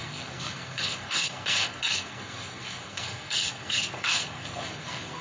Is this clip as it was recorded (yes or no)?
no